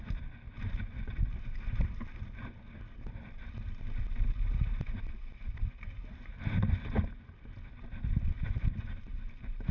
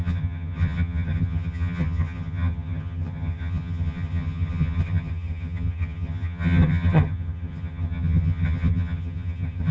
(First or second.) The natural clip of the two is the first